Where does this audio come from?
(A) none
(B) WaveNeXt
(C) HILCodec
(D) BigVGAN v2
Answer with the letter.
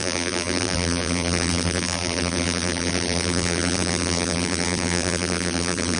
D